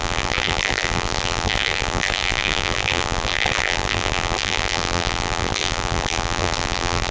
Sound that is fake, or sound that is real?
fake